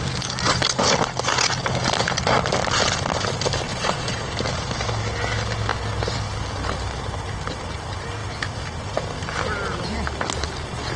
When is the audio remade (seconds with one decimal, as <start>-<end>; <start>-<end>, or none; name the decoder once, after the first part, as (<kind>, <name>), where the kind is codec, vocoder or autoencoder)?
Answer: 3.7-4.3 (vocoder, Vocos)